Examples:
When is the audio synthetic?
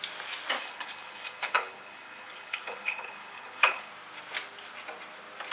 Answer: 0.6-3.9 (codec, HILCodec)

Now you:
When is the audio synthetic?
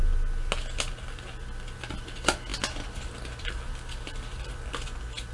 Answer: none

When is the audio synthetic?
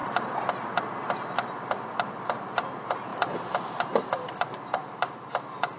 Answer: 2.2-5.8 (vocoder, BigVGAN v2)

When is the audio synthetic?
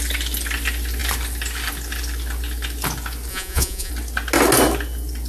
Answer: 3.3-3.9 (vocoder, Vocos)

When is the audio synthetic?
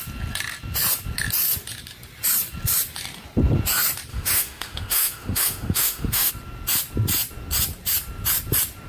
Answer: 4.1-6.3 (autoencoder, DAC-VAE)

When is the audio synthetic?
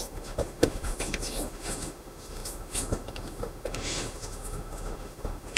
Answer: 0.0-5.6 (autoencoder, DAC-VAE)